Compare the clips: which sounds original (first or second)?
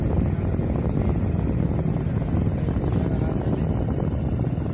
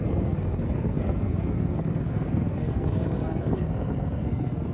first